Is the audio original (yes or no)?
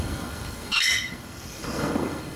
no